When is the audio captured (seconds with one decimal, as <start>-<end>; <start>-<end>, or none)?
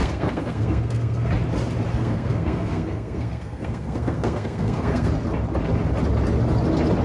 1.3-1.9; 5.1-7.0